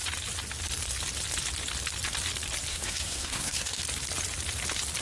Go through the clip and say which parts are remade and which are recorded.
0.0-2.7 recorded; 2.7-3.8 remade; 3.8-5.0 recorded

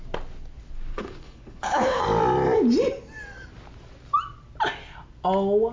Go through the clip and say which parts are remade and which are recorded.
0.0-0.9 recorded; 0.9-2.0 remade; 2.0-5.7 recorded

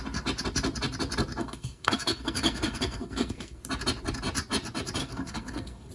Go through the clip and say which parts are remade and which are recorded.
0.0-1.4 recorded; 1.4-3.6 remade; 3.6-5.0 recorded; 5.0-5.9 remade

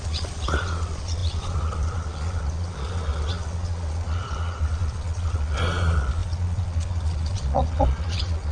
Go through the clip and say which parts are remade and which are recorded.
0.0-8.5 remade

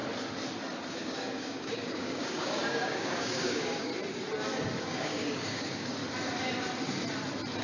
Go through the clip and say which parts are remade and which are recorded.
0.0-0.9 recorded; 0.9-3.9 remade; 3.9-4.8 recorded; 4.8-6.0 remade; 6.0-7.6 recorded

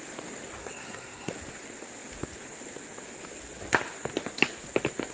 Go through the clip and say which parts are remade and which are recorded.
0.0-0.6 recorded; 0.6-1.3 remade; 1.3-5.1 recorded

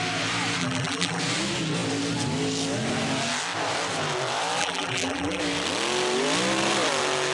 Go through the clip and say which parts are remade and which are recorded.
0.0-0.6 recorded; 0.6-1.2 remade; 1.2-4.6 recorded; 4.6-5.4 remade; 5.4-7.3 recorded